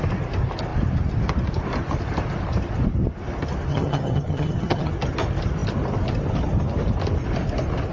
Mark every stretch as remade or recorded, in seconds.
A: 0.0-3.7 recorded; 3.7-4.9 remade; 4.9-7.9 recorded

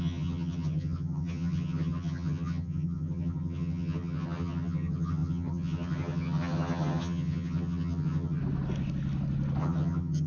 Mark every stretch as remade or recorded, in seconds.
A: 0.0-8.4 remade; 8.4-9.6 recorded; 9.6-10.3 remade

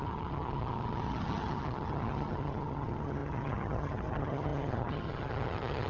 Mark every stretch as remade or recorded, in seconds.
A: 0.0-5.9 remade

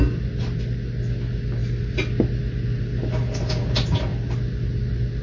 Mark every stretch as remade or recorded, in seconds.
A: 0.0-5.2 recorded

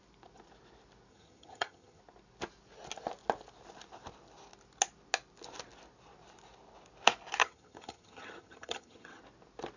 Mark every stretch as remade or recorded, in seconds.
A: 0.0-1.1 recorded; 1.1-2.0 remade; 2.0-7.4 recorded; 7.4-9.2 remade; 9.2-9.8 recorded

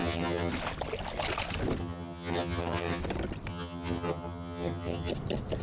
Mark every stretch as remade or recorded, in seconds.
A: 0.0-0.5 remade; 0.5-1.8 recorded; 1.8-3.0 remade; 3.0-3.5 recorded; 3.5-5.1 remade; 5.1-5.6 recorded

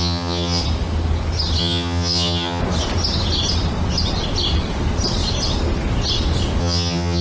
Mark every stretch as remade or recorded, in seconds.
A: 0.0-0.6 remade; 0.6-1.6 recorded; 1.6-2.6 remade; 2.6-6.6 recorded; 6.6-7.2 remade